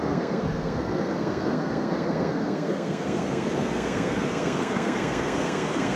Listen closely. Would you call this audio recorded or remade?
remade